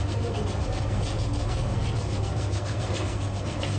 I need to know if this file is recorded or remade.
remade